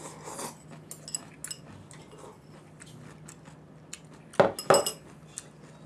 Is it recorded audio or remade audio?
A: recorded